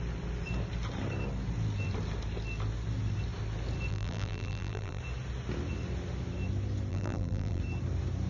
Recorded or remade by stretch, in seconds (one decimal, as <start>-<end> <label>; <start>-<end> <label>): 0.0-3.9 recorded; 3.9-5.0 remade; 5.0-6.9 recorded; 6.9-7.6 remade; 7.6-8.3 recorded

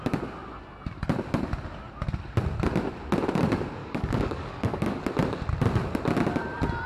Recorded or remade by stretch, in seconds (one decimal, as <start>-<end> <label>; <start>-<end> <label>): 0.0-3.8 recorded; 3.8-5.0 remade; 5.0-6.9 recorded

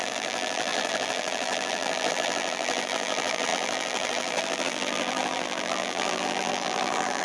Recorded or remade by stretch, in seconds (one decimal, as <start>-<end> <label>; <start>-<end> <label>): 0.0-7.2 remade